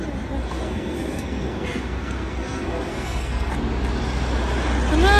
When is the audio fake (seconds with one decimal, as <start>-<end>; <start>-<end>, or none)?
0.4-3.5